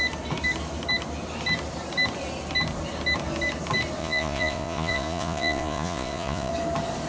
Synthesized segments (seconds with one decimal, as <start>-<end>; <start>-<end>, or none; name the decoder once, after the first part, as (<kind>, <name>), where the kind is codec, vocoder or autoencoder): 4.0-6.5 (vocoder, Vocos)